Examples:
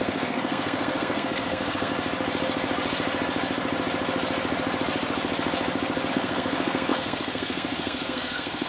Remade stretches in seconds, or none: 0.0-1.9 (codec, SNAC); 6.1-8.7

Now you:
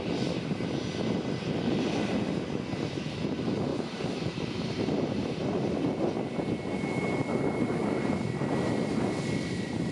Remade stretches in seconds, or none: 3.7-6.0 (vocoder, BigVGAN v2)

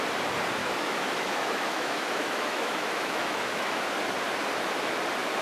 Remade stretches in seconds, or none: 0.6-3.8 (autoencoder, DAC-VAE)